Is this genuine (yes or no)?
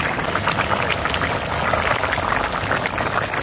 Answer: yes